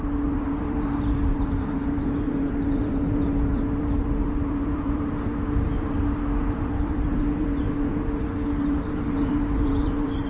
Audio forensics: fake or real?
fake